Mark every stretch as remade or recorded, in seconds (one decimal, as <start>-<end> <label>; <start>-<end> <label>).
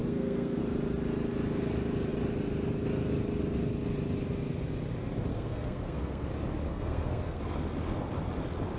0.0-0.6 remade; 0.6-5.3 recorded; 5.3-6.3 remade; 6.3-6.7 recorded; 6.7-7.4 remade; 7.4-8.8 recorded